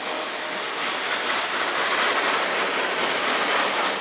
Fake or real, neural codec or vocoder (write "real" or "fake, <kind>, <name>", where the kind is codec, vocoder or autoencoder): real